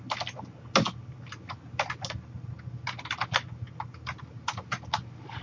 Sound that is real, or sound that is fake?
real